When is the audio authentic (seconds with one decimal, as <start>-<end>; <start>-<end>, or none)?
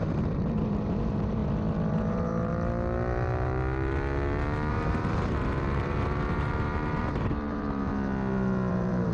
1.4-1.9; 2.5-4.7; 7.9-8.7